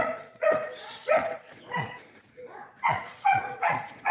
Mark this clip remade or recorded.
remade